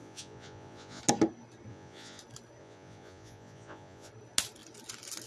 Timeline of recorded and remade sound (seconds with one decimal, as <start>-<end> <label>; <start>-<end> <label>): 0.0-1.0 remade; 1.0-1.7 recorded; 1.7-2.2 remade; 2.2-2.6 recorded; 2.6-4.1 remade; 4.1-5.3 recorded